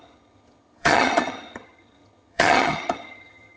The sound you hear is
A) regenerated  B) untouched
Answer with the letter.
A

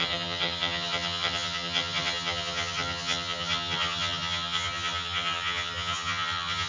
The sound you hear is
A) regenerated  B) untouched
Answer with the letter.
A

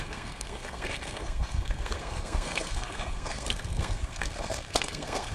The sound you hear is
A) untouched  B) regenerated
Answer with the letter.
B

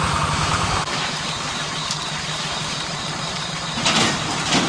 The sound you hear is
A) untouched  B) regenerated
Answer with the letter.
B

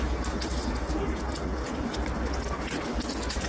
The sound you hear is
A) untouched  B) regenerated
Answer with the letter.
A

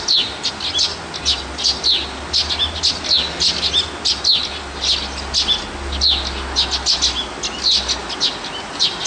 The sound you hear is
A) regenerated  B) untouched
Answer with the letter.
B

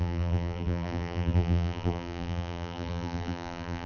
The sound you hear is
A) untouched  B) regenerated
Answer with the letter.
B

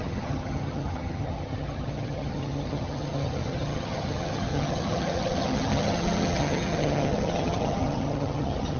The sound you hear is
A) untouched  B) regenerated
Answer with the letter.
B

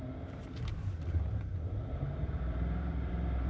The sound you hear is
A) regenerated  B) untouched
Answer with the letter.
A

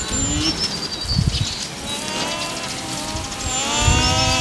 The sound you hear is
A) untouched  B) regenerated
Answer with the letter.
A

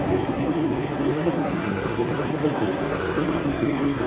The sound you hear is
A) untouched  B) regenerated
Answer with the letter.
B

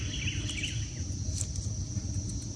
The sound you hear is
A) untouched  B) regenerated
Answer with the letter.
A